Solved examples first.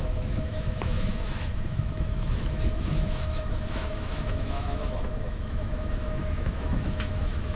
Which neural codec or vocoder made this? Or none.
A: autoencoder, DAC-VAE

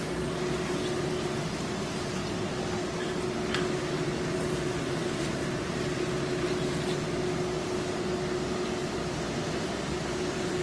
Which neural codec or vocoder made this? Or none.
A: none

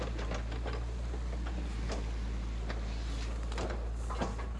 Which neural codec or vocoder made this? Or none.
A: none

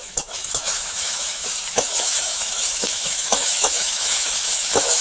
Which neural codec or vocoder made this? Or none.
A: autoencoder, DAC-VAE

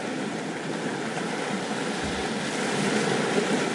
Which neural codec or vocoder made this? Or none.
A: none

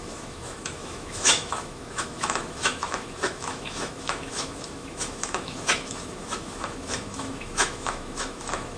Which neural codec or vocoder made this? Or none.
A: autoencoder, DAC-VAE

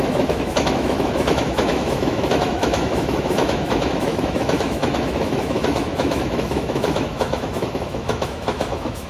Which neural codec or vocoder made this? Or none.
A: autoencoder, DAC-VAE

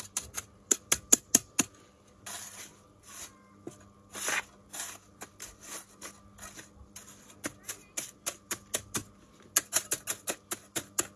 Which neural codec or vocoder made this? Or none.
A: none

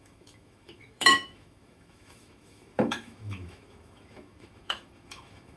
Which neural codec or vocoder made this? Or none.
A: autoencoder, DAC-VAE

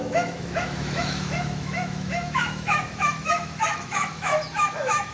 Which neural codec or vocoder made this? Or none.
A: autoencoder, DAC-VAE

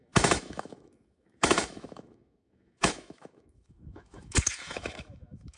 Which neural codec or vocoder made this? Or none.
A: autoencoder, DAC-VAE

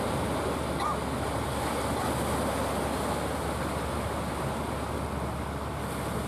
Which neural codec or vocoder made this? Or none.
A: none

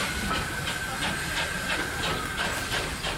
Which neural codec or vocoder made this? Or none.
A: none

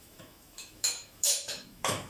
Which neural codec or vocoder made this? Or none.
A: autoencoder, DAC-VAE